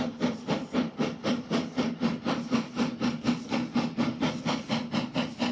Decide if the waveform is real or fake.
real